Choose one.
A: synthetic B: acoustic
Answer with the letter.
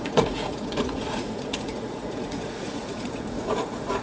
A